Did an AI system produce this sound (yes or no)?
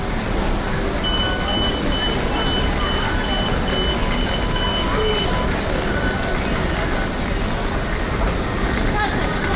no